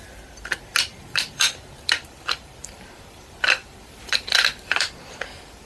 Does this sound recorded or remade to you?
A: remade